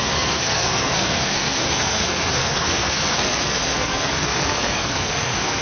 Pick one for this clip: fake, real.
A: fake